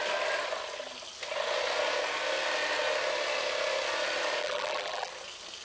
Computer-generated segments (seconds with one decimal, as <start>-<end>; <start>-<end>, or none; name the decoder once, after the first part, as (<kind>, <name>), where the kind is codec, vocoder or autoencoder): 4.4-5.1 (vocoder, BigVGAN v2)